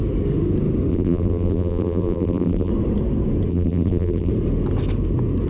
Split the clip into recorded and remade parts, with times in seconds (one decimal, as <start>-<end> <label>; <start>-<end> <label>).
0.0-0.9 recorded; 0.9-2.7 remade; 2.7-3.5 recorded; 3.5-4.3 remade; 4.3-5.5 recorded